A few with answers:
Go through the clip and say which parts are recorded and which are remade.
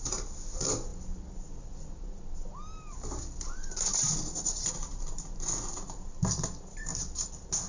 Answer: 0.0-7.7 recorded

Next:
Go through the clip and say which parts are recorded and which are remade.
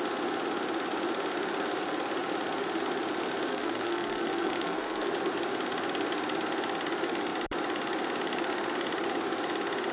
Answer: 0.0-3.5 recorded; 3.5-5.1 remade; 5.1-9.9 recorded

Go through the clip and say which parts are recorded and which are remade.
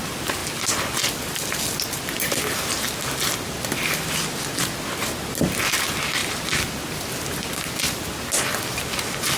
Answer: 0.0-9.4 recorded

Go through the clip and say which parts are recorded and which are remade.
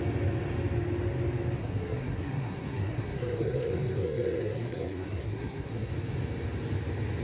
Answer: 0.0-1.6 recorded; 1.6-5.9 remade; 5.9-7.2 recorded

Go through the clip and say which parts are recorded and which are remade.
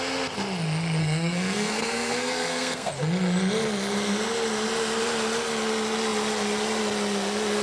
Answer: 0.0-1.0 recorded; 1.0-2.9 remade; 2.9-7.6 recorded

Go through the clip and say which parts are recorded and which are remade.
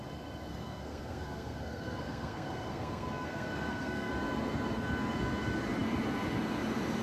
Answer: 0.0-0.5 recorded; 0.5-4.1 remade; 4.1-7.0 recorded